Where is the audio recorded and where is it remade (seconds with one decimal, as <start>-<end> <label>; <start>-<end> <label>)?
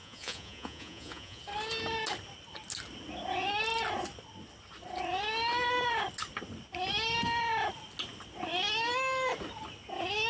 0.0-1.4 remade; 1.4-10.3 recorded